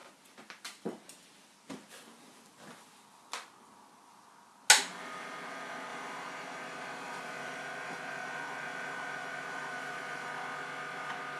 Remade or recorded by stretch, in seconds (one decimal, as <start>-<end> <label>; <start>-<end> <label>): 0.0-5.9 recorded; 5.9-10.3 remade; 10.3-11.4 recorded